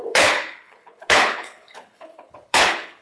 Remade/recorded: remade